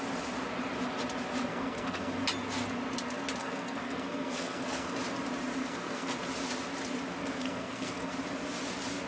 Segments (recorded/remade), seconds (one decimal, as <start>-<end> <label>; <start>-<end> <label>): 0.0-1.5 recorded; 1.5-2.1 remade; 2.1-3.4 recorded; 3.4-5.0 remade; 5.0-5.6 recorded; 5.6-6.2 remade; 6.2-7.2 recorded; 7.2-8.1 remade; 8.1-9.1 recorded